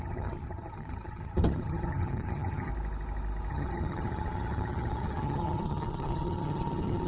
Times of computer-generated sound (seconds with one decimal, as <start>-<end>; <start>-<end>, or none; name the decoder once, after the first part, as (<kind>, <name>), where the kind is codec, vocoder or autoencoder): 0.0-2.7 (vocoder, HiFi-GAN); 3.5-7.1